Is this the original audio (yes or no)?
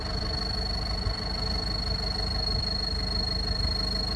yes